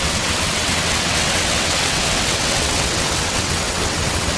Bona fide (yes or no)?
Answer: no